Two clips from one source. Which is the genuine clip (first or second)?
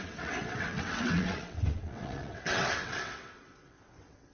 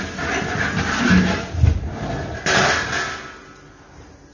second